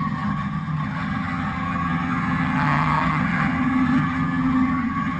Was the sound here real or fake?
fake